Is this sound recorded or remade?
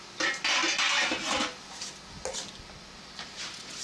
recorded